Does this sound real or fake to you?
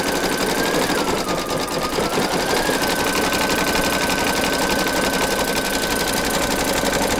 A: real